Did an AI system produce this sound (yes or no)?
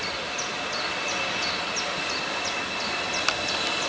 no